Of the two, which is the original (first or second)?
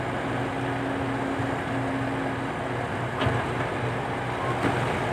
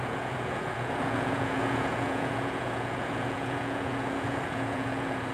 first